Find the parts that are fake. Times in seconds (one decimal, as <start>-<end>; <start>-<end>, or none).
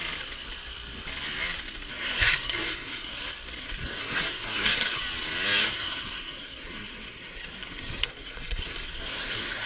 1.9-3.2; 3.6-5.0; 5.6-9.7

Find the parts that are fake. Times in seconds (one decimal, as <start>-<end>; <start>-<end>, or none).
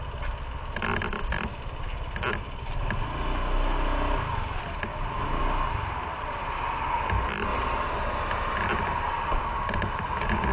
none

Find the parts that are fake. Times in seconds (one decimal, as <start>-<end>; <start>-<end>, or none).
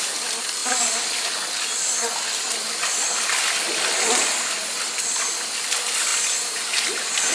none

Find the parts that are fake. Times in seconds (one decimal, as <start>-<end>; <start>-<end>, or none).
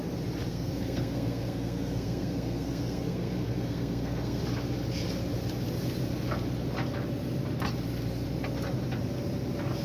0.5-4.4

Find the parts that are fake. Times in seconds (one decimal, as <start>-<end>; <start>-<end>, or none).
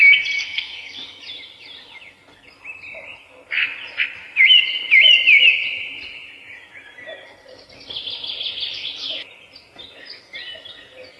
0.4-1.2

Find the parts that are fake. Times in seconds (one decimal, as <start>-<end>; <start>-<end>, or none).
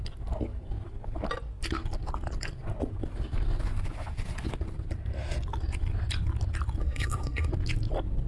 6.8-7.5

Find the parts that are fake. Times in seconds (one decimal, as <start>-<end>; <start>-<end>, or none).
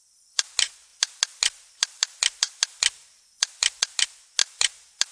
none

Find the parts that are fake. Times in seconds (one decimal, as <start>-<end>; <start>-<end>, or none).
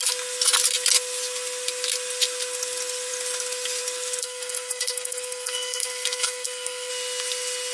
4.2-6.9